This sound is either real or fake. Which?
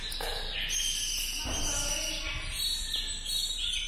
real